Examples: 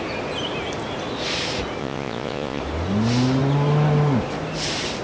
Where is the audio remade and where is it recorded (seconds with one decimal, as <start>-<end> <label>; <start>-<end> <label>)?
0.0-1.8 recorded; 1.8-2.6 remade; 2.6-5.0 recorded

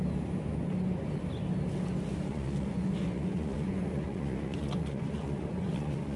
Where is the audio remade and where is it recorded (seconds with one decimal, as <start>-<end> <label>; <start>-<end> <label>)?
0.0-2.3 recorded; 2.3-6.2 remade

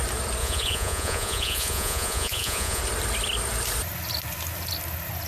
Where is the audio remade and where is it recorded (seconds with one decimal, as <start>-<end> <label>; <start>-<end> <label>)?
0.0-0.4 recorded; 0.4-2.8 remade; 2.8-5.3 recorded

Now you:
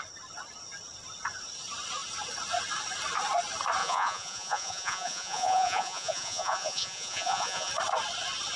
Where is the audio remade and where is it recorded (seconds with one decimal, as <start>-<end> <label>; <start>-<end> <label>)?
0.0-3.8 recorded; 3.8-7.7 remade; 7.7-8.6 recorded

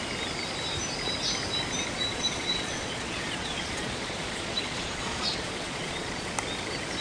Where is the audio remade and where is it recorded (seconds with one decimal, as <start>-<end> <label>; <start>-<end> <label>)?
0.0-2.1 recorded; 2.1-6.3 remade; 6.3-7.0 recorded